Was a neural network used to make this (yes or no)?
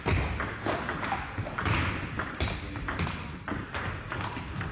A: no